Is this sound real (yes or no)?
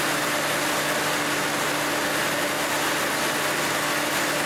yes